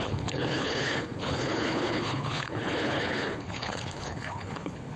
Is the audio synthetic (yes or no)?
yes